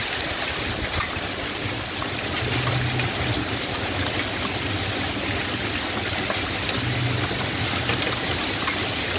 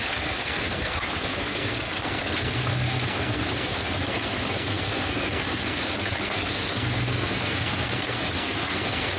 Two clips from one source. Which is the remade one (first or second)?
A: second